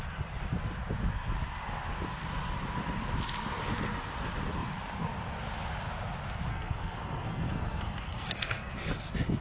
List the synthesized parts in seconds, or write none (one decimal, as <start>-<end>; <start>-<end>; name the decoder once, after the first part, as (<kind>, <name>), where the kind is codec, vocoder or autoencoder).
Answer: 6.5-8.7 (codec, SNAC)